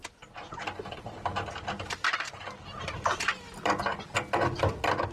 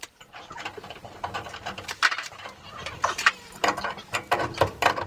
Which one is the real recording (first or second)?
first